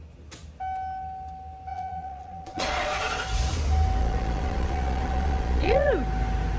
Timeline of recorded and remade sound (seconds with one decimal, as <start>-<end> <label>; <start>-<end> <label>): 0.0-1.7 recorded; 1.7-3.2 remade; 3.2-4.0 recorded; 4.0-5.9 remade; 5.9-6.6 recorded